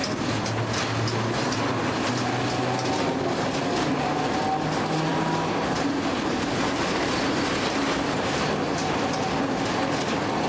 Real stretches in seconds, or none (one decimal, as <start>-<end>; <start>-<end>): 0.0-10.5